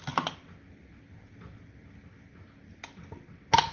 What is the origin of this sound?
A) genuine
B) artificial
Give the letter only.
A